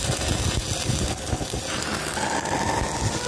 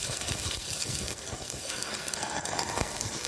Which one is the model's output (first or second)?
second